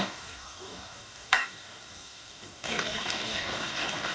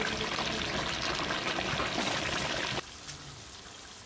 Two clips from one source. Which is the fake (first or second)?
first